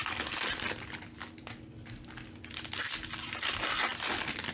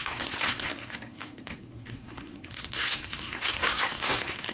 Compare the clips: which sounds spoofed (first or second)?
second